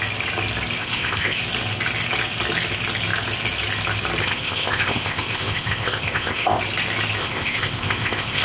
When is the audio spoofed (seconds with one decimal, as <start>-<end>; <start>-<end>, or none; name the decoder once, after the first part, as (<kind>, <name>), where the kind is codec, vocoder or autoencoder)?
0.8-1.4 (codec, ZipCodec); 4.2-6.6; 7.2-8.4